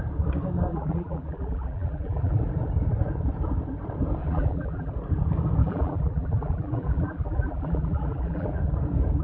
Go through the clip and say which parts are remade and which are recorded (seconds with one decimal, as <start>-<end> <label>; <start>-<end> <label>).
0.0-0.7 recorded; 0.7-2.4 remade; 2.4-4.2 recorded; 4.2-4.9 remade; 4.9-5.6 recorded; 5.6-8.6 remade; 8.6-9.2 recorded